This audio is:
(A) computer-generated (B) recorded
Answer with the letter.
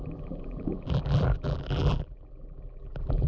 A